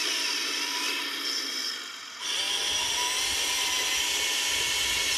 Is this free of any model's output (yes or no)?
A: yes